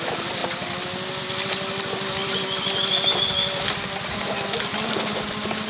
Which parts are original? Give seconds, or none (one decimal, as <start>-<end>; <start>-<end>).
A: 0.0-5.7